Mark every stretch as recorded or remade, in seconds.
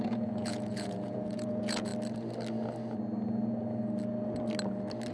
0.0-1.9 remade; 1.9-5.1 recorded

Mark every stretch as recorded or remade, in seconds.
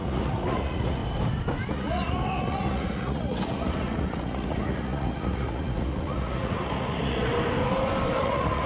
0.0-1.0 remade; 1.0-1.7 recorded; 1.7-7.3 remade; 7.3-8.2 recorded; 8.2-8.7 remade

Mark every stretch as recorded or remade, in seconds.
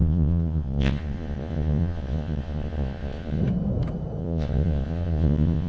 0.0-3.4 remade; 3.4-4.2 recorded; 4.2-5.7 remade